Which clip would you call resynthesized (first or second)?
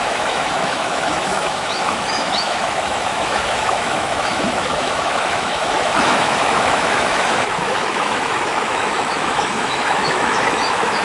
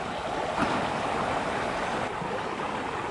first